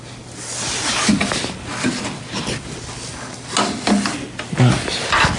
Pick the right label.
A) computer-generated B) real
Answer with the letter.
B